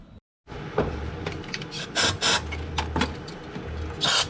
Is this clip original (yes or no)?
yes